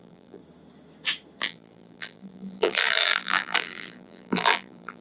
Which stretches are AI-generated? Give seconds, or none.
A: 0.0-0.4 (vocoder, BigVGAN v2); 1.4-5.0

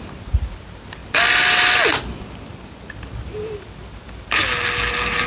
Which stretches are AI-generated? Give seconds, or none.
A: 0.0-1.0 (vocoder, BigVGAN v2); 3.2-4.4

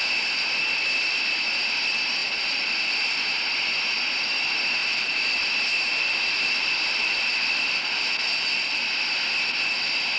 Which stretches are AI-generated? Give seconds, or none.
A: 2.2-3.2 (vocoder, BigVGAN v2); 4.8-5.5; 5.9-8.8

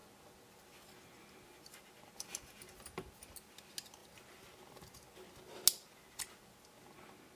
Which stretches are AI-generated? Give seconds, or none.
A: none

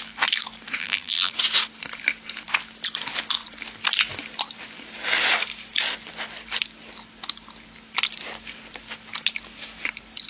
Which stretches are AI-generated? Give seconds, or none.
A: 0.8-1.3 (vocoder, BigVGAN v2)

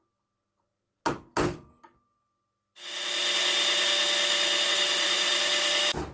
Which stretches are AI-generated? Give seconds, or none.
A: 0.0-1.0 (vocoder, BigVGAN v2); 4.7-6.1

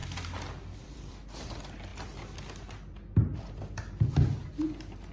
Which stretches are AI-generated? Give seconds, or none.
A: 0.0-1.1 (vocoder, BigVGAN v2)

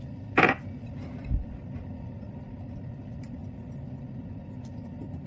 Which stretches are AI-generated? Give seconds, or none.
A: none